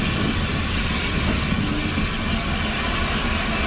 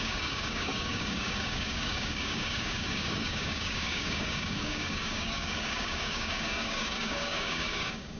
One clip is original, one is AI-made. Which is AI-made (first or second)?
second